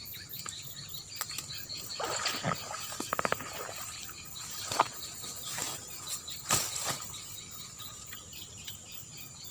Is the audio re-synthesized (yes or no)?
no